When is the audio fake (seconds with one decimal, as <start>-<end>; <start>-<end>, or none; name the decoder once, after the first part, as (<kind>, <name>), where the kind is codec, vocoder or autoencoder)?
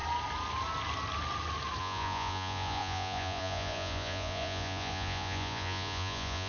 1.8-6.5 (vocoder, Vocos)